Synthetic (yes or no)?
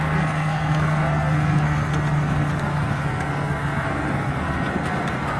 yes